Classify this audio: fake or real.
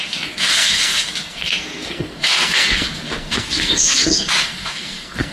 fake